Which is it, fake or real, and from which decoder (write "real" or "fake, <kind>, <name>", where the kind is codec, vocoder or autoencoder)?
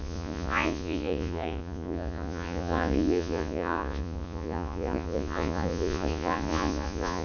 fake, vocoder, Vocos